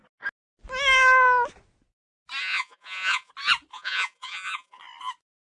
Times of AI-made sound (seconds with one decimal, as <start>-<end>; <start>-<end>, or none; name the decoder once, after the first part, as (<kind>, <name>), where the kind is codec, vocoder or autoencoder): 2.4-3.3 (vocoder, Vocos); 3.7-4.8